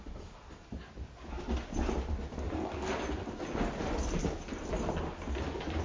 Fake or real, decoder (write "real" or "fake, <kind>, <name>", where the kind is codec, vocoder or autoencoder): real